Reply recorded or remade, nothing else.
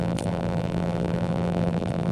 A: remade